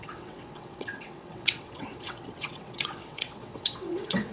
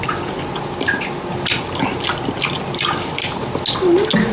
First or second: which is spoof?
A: first